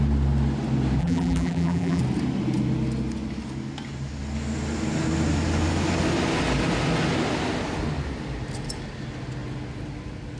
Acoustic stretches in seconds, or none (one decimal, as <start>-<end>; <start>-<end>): 0.0-1.0; 2.0-10.4